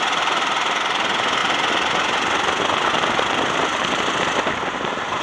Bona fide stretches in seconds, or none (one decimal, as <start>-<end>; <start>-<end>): 0.0-5.2